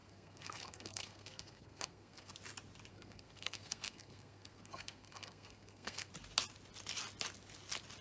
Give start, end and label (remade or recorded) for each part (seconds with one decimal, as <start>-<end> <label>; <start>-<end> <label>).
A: 0.0-2.3 remade; 2.3-2.9 recorded; 2.9-6.1 remade; 6.1-8.0 recorded